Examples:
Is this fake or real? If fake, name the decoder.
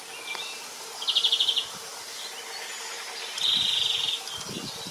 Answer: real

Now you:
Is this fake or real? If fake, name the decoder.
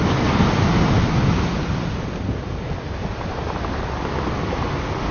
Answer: real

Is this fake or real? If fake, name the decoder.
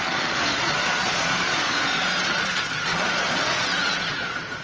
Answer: fake, vocoder, Vocos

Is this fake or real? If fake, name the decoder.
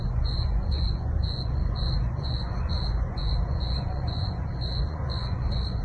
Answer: fake, vocoder, Vocos